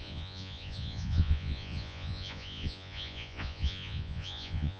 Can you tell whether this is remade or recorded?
remade